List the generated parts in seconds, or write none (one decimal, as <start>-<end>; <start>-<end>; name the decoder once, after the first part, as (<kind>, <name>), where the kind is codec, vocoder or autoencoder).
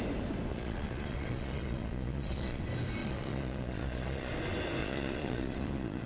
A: 0.5-2.6 (vocoder, Vocos); 3.0-4.3; 4.8-6.1